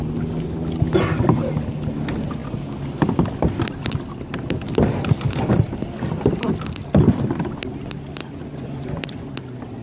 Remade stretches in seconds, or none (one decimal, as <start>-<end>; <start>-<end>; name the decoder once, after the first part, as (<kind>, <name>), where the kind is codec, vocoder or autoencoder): 8.2-9.3 (vocoder, Vocos)

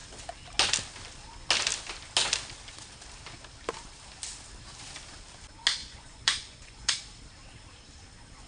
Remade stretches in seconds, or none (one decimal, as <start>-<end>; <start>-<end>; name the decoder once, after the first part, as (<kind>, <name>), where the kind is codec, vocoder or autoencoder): 5.8-6.9 (vocoder, Vocos)

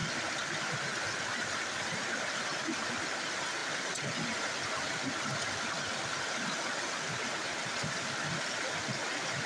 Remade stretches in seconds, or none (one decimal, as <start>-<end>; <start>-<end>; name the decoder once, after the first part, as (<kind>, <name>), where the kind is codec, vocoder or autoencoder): none

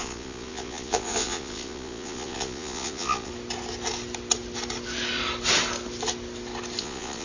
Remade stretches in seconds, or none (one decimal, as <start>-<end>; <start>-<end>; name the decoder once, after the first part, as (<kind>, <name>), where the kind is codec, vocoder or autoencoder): 0.0-3.3 (vocoder, Vocos); 6.8-7.2